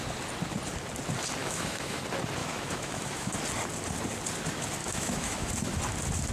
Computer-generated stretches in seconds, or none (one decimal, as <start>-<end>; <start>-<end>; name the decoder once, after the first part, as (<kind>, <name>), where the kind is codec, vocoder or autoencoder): 1.4-2.0 (autoencoder, DAC-VAE); 2.4-3.3; 4.8-5.5